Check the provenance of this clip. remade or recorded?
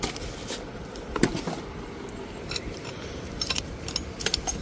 recorded